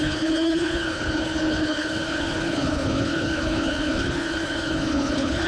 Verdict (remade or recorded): remade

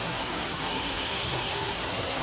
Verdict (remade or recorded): remade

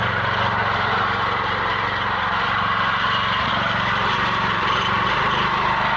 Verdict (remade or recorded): remade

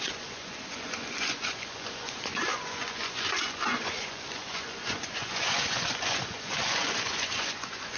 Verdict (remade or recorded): remade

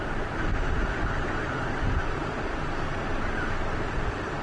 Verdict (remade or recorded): recorded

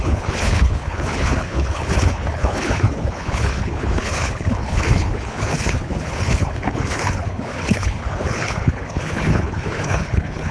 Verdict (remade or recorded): remade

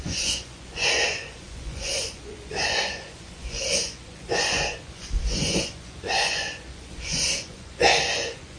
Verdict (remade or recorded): remade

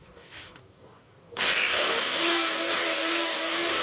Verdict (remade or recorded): remade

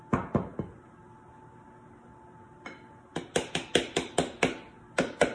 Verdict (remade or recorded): recorded